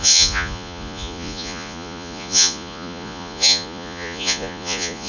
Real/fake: fake